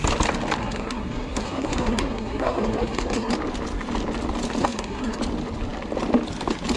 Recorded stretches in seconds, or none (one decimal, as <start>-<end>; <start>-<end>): 0.0-0.6; 3.3-4.6; 5.2-6.8